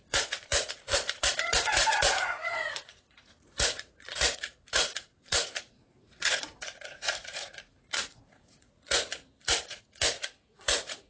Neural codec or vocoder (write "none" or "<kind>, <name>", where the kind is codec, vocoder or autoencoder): vocoder, Vocos